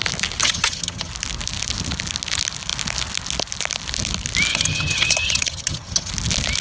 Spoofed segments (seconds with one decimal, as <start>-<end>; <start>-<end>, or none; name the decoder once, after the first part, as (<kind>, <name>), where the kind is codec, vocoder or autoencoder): 0.4-1.1 (vocoder, HiFi-GAN); 4.5-6.1